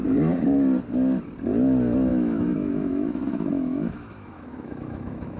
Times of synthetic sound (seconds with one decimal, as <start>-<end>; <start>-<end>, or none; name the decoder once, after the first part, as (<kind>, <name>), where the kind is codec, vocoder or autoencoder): 2.1-5.4 (autoencoder, DAC-VAE)